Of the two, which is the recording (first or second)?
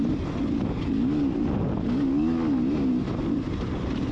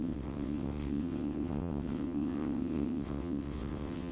first